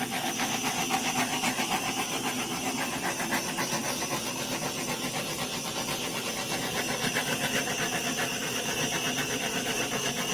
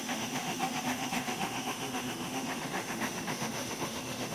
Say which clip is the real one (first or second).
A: first